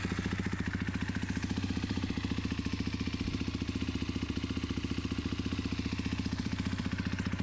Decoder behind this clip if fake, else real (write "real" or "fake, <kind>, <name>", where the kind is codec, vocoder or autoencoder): fake, vocoder, BigVGAN v2